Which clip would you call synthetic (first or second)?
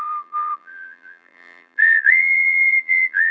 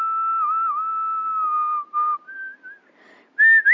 first